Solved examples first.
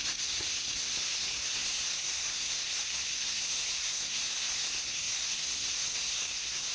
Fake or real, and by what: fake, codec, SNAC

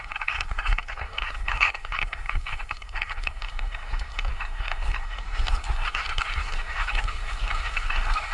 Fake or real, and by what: fake, codec, SNAC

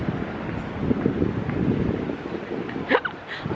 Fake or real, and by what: real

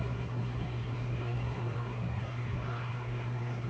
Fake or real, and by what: fake, codec, SNAC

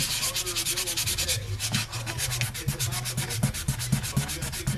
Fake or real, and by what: real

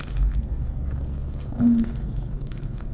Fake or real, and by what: fake, codec, SNAC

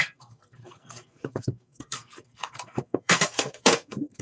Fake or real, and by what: fake, codec, SNAC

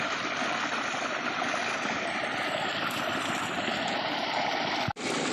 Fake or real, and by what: real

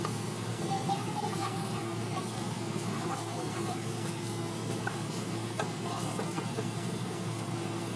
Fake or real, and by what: fake, codec, SNAC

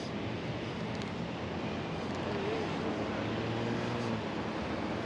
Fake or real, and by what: real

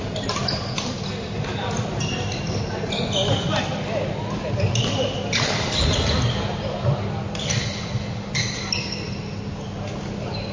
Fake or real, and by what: real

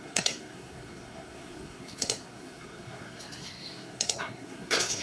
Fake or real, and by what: fake, codec, SNAC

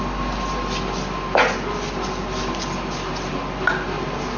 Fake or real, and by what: real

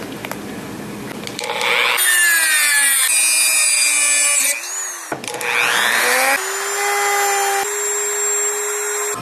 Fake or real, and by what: real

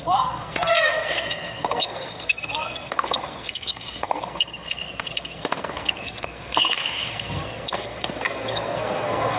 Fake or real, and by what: fake, codec, SNAC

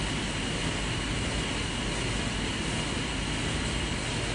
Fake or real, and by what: real